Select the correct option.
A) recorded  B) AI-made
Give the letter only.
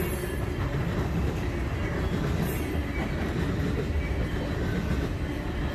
A